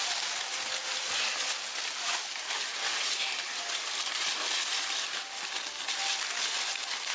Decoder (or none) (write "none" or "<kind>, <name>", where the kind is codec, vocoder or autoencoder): none